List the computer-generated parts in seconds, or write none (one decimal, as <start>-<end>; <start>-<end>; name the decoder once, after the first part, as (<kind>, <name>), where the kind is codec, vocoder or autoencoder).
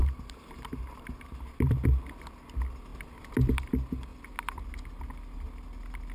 0.0-1.7 (vocoder, BigVGAN v2)